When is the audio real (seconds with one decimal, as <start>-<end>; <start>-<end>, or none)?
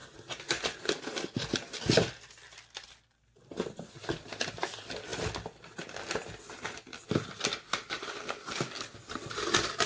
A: 0.0-9.9